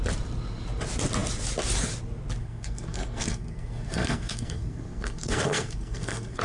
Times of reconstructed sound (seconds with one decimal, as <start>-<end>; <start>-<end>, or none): 2.4-6.4